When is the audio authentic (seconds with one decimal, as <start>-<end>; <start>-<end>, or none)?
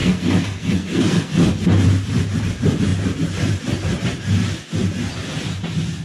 1.4-6.0